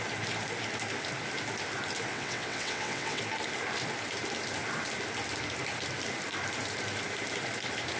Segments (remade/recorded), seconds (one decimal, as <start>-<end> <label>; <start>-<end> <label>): 0.0-2.1 recorded; 2.1-3.2 remade; 3.2-8.0 recorded